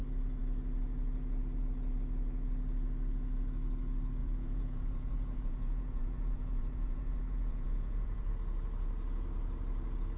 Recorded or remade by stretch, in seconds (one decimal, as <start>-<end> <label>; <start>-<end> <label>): 0.0-4.2 recorded; 4.2-8.3 remade; 8.3-10.2 recorded